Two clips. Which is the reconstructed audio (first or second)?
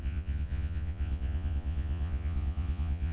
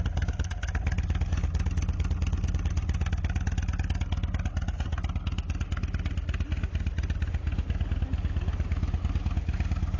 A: first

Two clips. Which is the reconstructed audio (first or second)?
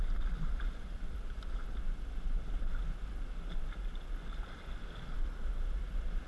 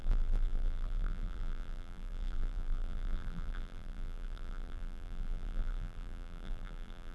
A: second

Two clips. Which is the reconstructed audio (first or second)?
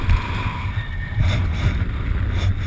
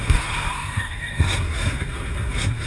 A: second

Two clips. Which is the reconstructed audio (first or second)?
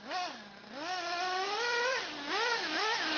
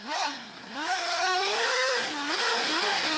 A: second